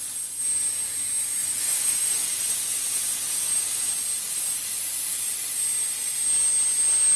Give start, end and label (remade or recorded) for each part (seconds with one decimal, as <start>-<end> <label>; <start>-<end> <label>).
0.0-1.4 recorded; 1.4-3.9 remade; 3.9-7.2 recorded